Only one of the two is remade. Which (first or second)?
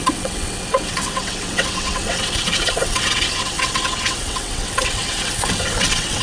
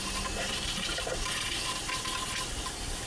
first